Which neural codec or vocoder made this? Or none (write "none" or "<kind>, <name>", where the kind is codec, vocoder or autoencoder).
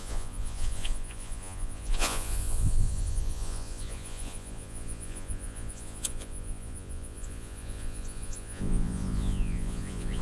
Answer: vocoder, Vocos